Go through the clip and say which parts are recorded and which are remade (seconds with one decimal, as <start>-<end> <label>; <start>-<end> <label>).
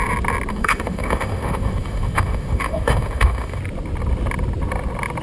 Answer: 0.0-0.5 recorded; 0.5-3.6 remade; 3.6-5.2 recorded